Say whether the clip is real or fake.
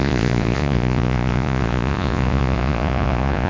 fake